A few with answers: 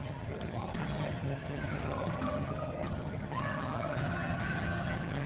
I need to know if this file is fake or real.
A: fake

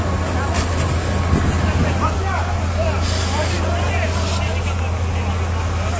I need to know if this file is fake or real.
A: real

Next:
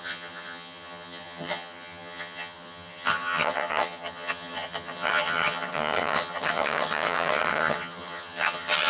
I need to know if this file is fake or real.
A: fake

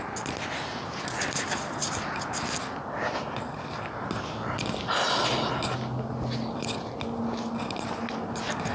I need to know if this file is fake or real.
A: real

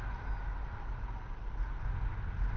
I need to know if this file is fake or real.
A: real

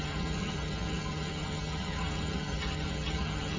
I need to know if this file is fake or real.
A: fake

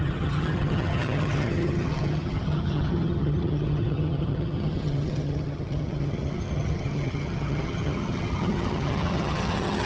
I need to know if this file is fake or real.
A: fake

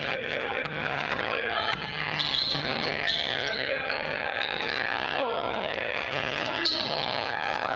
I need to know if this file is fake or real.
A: fake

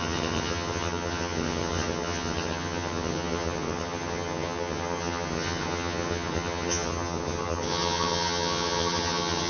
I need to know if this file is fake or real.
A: fake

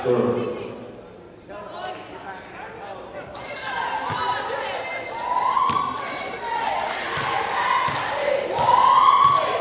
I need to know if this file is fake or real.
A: real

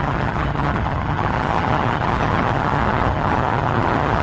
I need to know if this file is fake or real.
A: fake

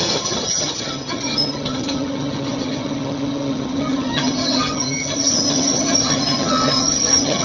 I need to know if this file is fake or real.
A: fake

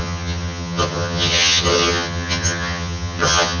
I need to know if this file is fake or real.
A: fake